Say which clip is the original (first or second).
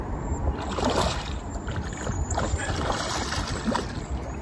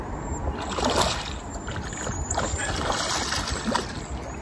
second